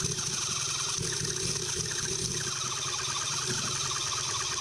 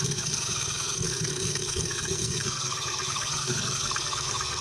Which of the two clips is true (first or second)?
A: first